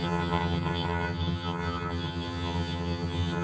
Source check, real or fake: fake